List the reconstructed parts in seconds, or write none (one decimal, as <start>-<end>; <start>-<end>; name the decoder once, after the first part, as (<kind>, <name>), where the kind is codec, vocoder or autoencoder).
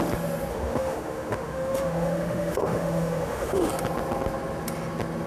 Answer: 0.5-3.7 (autoencoder, DAC-VAE)